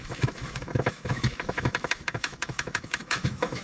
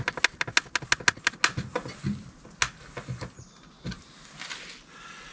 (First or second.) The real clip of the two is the second